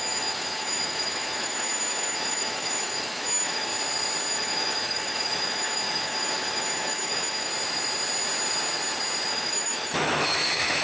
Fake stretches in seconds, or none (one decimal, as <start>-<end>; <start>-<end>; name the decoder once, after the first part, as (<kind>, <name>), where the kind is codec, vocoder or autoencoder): 0.0-3.7 (autoencoder, DAC-VAE); 4.3-7.5; 9.3-10.8